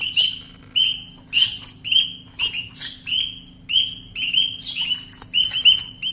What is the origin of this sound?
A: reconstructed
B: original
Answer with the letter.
B